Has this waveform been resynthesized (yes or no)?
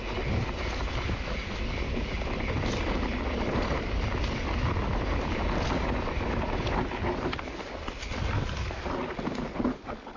no